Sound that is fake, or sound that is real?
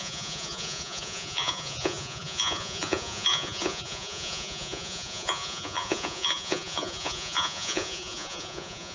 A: fake